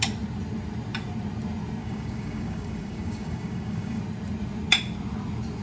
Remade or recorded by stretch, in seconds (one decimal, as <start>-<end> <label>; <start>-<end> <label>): 0.0-1.8 recorded; 1.8-4.0 remade; 4.0-5.6 recorded